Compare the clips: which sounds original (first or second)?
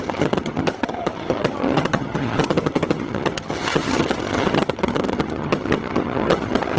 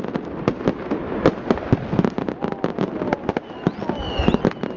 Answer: second